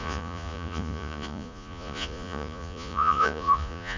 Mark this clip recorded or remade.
remade